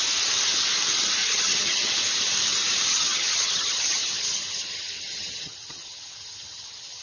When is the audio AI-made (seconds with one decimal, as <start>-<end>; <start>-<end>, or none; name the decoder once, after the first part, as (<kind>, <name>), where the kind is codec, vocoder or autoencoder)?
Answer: 1.2-1.9 (vocoder, HiFi-GAN); 2.9-7.0